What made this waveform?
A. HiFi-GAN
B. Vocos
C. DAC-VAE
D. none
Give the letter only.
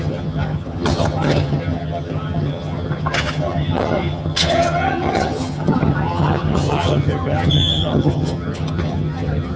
A